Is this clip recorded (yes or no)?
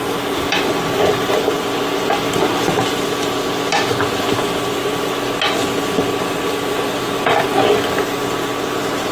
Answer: yes